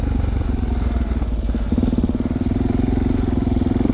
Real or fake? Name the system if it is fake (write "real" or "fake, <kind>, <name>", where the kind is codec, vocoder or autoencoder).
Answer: fake, vocoder, BigVGAN v2